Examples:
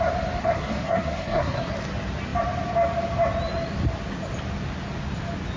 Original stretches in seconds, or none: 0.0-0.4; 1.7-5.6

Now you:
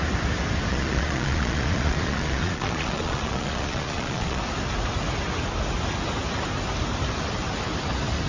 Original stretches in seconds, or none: 0.0-0.7; 4.4-8.3

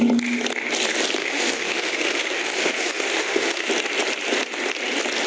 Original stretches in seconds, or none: 0.0-1.2; 3.7-5.3

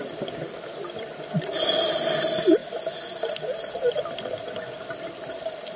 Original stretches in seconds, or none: 0.0-5.8

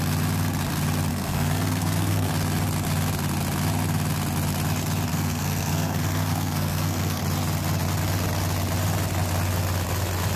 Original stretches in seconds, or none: 0.0-1.1; 2.3-5.1; 7.2-10.4

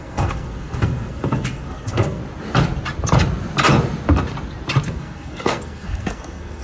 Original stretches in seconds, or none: 2.2-4.9